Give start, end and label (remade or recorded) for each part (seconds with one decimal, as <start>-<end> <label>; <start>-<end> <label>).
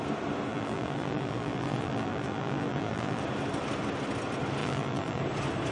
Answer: 0.0-0.5 recorded; 0.5-3.2 remade; 3.2-4.6 recorded; 4.6-5.2 remade; 5.2-5.7 recorded